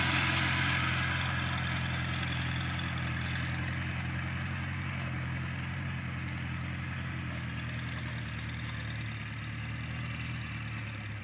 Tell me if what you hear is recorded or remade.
recorded